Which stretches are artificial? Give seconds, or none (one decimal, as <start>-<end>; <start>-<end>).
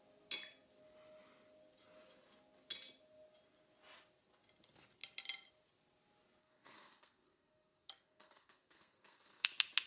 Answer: 6.4-9.5